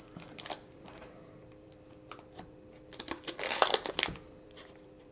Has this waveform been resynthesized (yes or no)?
yes